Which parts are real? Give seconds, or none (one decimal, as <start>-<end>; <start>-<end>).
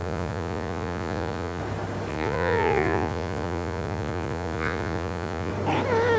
1.6-2.1; 5.5-6.2